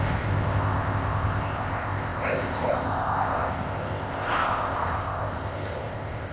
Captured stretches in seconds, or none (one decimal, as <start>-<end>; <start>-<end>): none

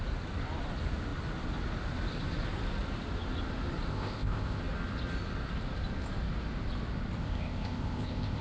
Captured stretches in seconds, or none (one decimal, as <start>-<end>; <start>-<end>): 0.0-3.9; 4.6-7.2

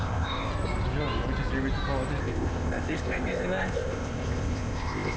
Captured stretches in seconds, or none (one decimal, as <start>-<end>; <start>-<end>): 0.5-2.2